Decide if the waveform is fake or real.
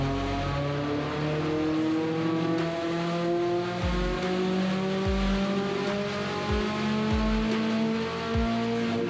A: real